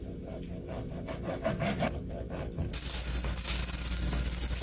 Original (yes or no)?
yes